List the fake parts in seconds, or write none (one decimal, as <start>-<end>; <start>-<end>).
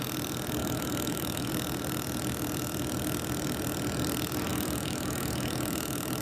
0.6-1.5; 4.5-6.2